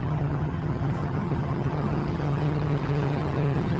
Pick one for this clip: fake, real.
fake